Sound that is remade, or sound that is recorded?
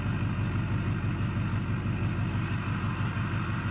recorded